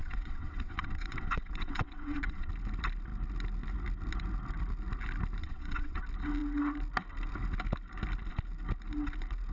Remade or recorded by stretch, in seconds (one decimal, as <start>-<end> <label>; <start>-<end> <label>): 0.0-2.5 remade; 2.5-5.4 recorded; 5.4-6.0 remade; 6.0-9.5 recorded